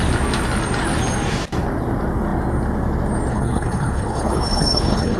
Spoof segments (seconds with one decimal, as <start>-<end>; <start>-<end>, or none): 3.3-5.2